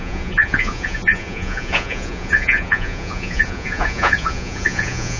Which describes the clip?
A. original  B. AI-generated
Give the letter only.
B